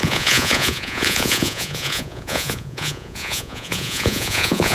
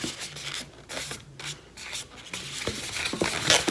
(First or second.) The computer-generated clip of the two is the first